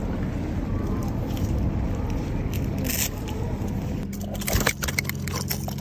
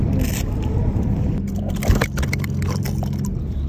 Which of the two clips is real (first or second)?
first